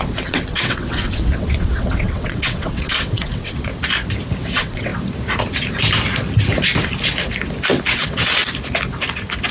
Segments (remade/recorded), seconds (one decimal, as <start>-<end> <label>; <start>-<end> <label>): 0.0-3.7 remade; 3.7-4.4 recorded; 4.4-4.9 remade; 4.9-7.9 recorded; 7.9-8.4 remade; 8.4-9.5 recorded